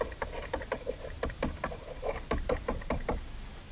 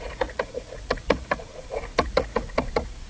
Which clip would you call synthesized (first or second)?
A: second